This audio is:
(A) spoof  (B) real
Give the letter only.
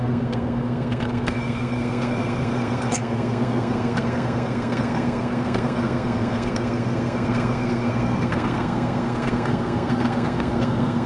A